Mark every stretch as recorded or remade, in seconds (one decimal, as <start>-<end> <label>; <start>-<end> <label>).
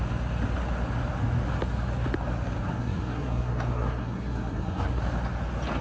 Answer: 0.0-2.7 recorded; 2.7-5.0 remade; 5.0-5.8 recorded